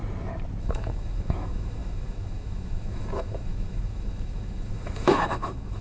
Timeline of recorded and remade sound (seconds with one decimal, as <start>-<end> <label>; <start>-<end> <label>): 0.0-0.6 recorded; 0.6-5.8 remade